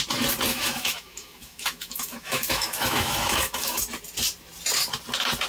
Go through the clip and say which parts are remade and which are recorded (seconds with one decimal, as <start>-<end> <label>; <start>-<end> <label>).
0.0-0.5 recorded; 0.5-3.8 remade; 3.8-5.5 recorded